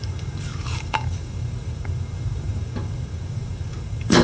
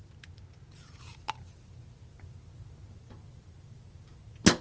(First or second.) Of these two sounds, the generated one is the first